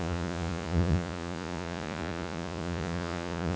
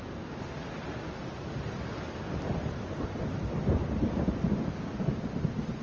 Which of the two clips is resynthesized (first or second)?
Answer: first